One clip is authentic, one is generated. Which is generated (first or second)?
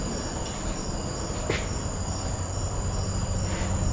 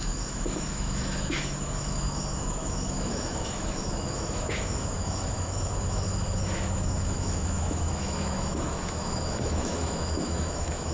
second